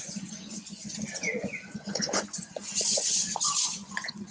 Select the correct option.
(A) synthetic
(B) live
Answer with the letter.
A